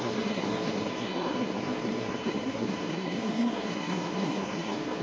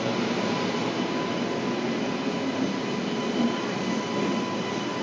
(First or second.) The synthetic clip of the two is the first